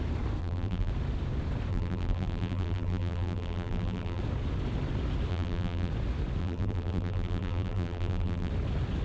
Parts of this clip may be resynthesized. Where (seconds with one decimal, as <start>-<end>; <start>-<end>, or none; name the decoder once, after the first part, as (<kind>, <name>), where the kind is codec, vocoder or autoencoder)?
0.4-0.9 (vocoder, BigVGAN v2); 1.7-4.2; 5.3-5.9; 6.4-8.5

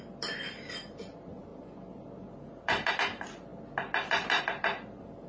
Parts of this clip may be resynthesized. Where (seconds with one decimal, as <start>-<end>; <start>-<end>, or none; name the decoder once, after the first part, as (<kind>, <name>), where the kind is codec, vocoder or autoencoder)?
none

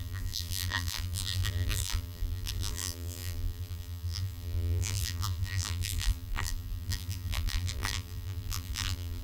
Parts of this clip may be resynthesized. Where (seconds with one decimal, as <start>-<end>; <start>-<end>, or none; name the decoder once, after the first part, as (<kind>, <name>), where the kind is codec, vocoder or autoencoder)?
0.0-9.2 (vocoder, BigVGAN v2)

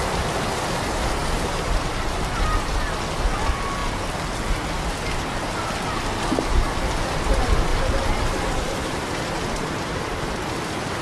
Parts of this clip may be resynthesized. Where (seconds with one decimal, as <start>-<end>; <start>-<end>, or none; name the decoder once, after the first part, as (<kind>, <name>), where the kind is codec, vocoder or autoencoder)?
7.7-11.0 (vocoder, BigVGAN v2)

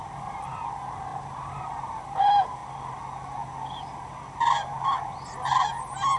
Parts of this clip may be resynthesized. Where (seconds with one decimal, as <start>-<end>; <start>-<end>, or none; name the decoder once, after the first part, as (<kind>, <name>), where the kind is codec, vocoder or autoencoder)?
0.0-2.6 (vocoder, BigVGAN v2)